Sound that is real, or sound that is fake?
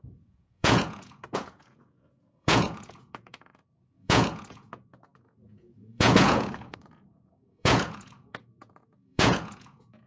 fake